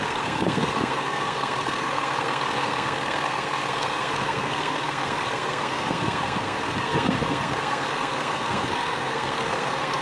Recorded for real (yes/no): no